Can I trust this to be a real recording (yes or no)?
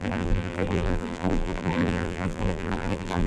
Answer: no